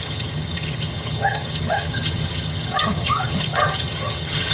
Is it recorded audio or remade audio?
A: remade